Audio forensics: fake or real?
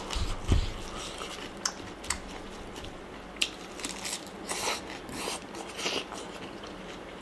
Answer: real